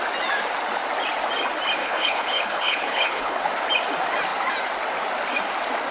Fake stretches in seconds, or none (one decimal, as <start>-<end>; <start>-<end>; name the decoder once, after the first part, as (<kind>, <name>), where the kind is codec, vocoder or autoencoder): 1.8-3.4 (codec, HILCodec)